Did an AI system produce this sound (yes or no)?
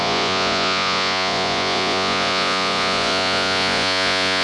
yes